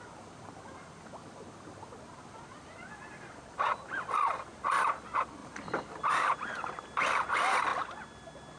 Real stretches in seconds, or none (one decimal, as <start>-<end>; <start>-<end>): 0.0-8.6